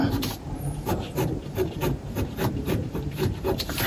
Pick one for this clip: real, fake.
fake